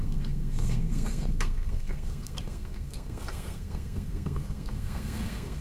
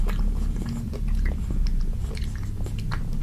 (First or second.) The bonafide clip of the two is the second